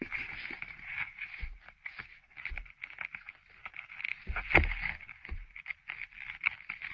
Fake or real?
real